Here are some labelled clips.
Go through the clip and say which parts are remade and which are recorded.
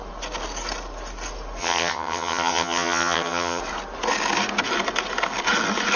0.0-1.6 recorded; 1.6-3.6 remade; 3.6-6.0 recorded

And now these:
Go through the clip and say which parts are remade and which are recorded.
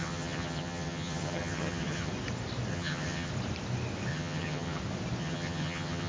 0.0-2.1 remade; 2.1-2.7 recorded; 2.7-3.3 remade; 3.3-4.1 recorded; 4.1-4.8 remade; 4.8-5.2 recorded; 5.2-6.1 remade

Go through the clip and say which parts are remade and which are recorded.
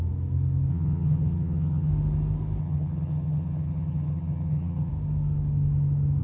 0.0-0.7 recorded; 0.7-1.9 remade; 1.9-2.6 recorded; 2.6-4.9 remade; 4.9-6.2 recorded